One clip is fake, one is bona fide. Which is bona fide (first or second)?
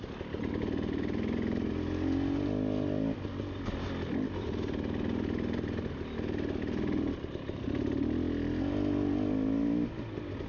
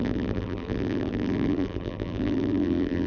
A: first